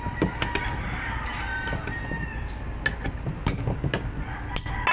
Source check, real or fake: real